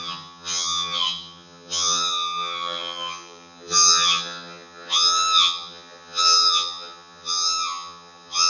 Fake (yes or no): yes